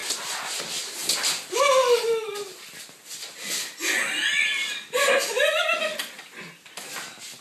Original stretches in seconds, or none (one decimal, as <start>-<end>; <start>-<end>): 0.0-7.4